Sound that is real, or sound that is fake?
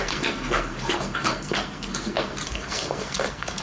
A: fake